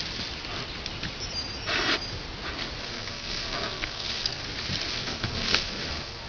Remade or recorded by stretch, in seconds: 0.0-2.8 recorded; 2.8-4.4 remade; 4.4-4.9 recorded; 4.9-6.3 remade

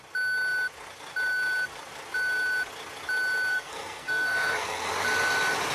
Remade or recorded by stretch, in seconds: 0.0-3.5 recorded; 3.5-4.9 remade; 4.9-5.7 recorded

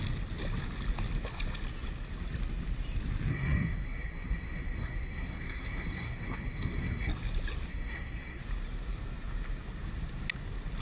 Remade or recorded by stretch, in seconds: 0.0-3.3 recorded; 3.3-7.1 remade; 7.1-7.7 recorded; 7.7-8.4 remade; 8.4-10.8 recorded

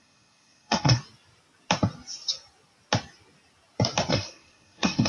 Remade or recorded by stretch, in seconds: 0.0-1.0 remade; 1.0-4.1 recorded; 4.1-5.1 remade